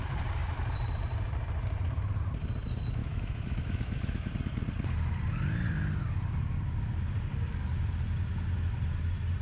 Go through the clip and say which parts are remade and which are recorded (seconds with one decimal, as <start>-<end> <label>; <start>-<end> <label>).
0.0-3.0 recorded; 3.0-4.3 remade; 4.3-9.4 recorded